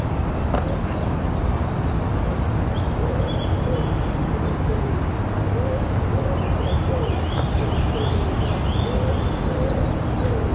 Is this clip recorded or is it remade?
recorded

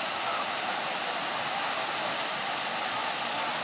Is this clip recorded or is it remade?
recorded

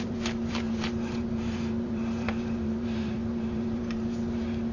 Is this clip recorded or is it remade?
remade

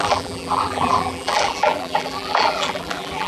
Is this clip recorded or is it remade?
remade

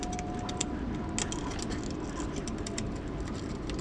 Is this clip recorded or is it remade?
recorded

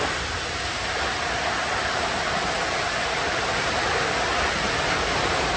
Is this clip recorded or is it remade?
recorded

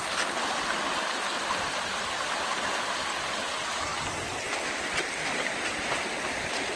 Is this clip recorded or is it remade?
recorded